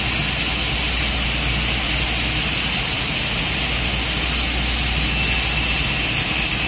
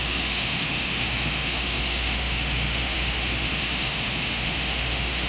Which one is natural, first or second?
first